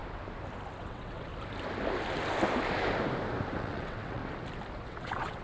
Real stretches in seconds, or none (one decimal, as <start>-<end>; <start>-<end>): 0.0-0.8; 1.3-3.6; 4.2-4.8